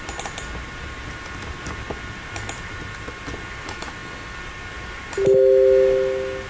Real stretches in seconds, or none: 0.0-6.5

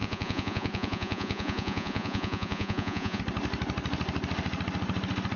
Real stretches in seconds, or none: 3.2-5.4

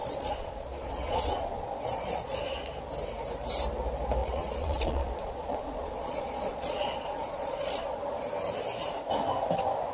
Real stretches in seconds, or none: 2.4-4.2; 8.0-9.9

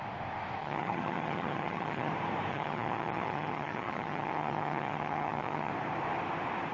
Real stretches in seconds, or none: 0.0-0.6; 2.1-2.5; 5.7-6.7

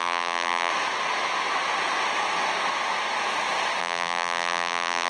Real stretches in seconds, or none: 0.7-3.8

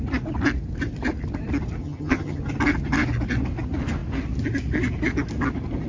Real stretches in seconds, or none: 0.0-1.8; 2.4-5.9

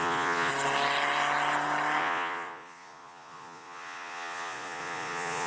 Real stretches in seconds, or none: 0.5-2.0